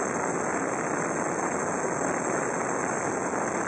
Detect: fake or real real